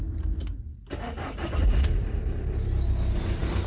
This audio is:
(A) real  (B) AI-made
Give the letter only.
A